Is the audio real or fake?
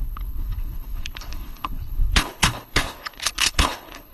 fake